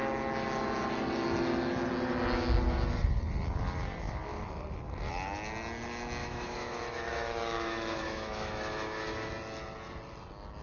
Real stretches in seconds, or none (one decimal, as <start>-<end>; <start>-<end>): 0.0-6.2; 9.3-10.6